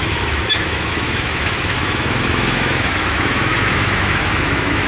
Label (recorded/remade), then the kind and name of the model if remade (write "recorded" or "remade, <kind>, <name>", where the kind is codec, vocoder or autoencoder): remade, autoencoder, DAC-VAE